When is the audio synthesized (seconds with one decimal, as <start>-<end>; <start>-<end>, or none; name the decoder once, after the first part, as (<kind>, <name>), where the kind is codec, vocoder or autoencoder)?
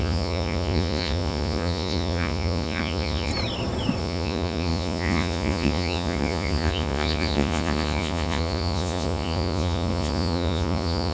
0.0-3.3 (vocoder, Vocos); 4.0-11.1